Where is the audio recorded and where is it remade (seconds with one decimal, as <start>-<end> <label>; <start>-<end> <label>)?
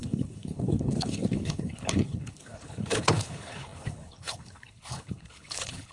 0.0-5.9 remade